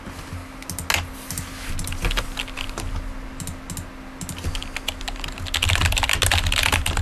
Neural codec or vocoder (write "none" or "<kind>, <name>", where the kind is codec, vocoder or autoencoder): none